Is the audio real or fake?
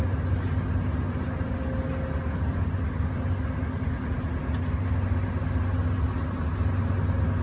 real